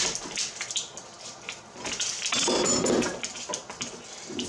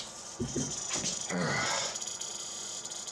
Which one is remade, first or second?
second